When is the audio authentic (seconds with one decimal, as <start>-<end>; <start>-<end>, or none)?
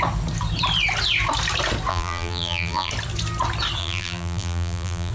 0.0-1.9; 2.9-3.8